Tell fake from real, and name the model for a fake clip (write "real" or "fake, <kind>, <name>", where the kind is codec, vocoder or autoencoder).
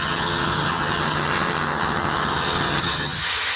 fake, vocoder, HiFi-GAN